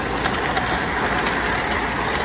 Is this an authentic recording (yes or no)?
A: yes